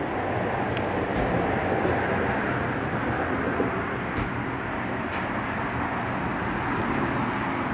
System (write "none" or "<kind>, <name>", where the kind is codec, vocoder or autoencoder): none